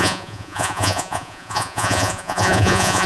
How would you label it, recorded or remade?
remade